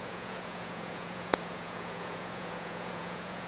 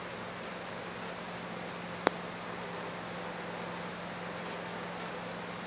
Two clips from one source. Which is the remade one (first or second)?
first